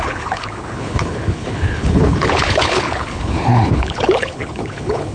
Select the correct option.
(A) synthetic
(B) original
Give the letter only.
A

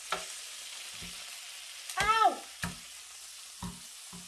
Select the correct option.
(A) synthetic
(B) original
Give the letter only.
B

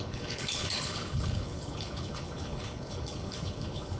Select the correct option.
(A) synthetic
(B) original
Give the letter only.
A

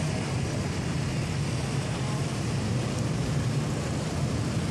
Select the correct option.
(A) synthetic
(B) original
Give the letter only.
B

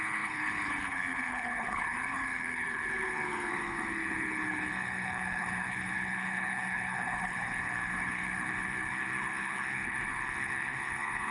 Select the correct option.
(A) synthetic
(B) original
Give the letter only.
A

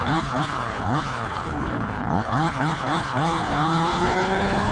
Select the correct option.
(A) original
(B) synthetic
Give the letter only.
B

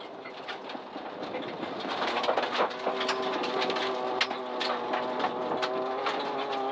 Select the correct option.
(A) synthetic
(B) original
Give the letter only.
B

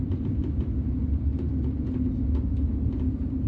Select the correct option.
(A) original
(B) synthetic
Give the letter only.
A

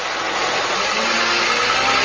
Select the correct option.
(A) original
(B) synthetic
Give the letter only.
A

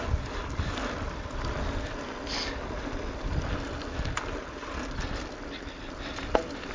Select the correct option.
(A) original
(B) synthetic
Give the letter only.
A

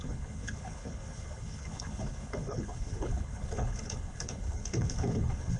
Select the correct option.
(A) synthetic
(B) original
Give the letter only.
A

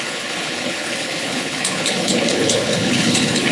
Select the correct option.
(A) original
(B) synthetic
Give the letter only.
B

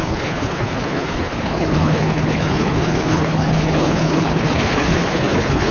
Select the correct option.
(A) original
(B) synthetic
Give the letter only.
B